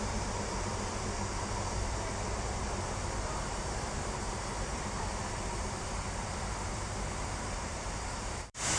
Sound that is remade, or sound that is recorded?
remade